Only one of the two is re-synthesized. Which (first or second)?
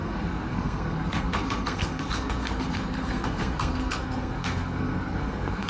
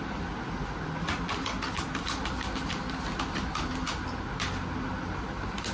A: first